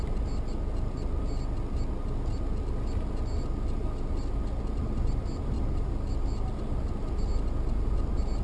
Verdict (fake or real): real